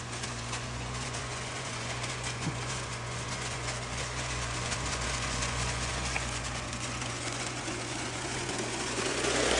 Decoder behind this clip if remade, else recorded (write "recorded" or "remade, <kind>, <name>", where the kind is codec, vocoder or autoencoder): remade, vocoder, Vocos